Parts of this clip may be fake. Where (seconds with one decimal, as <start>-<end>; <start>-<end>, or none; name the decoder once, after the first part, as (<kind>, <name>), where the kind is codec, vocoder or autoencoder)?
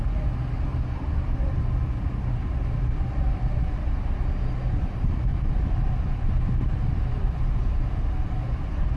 0.7-1.6 (vocoder, BigVGAN v2)